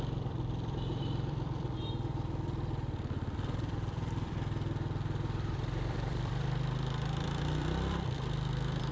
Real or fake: fake